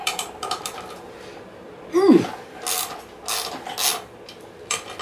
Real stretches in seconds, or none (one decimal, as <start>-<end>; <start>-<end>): 2.6-3.9

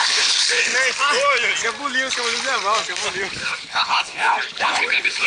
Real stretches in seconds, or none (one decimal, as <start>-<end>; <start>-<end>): 0.7-3.4

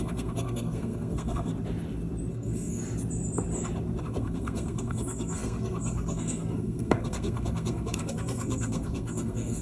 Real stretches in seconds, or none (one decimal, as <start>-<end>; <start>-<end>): 1.5-2.3; 2.8-4.0

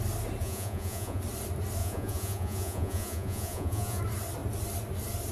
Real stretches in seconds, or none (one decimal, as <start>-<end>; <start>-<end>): 0.0-0.4; 1.2-1.8; 4.0-5.3

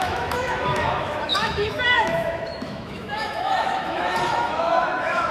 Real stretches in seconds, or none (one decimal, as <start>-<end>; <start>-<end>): none

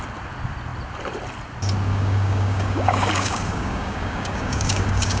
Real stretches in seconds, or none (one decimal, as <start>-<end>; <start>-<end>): 0.0-1.9

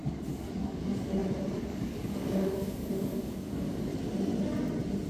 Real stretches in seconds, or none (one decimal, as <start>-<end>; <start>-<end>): 0.0-0.6; 1.2-1.7; 3.9-5.1